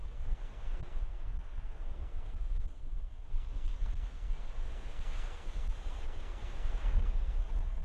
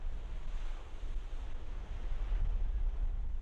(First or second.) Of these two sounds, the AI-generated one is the first